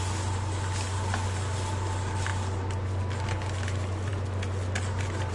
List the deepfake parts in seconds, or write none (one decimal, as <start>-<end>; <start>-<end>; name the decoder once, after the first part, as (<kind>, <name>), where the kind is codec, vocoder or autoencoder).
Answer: none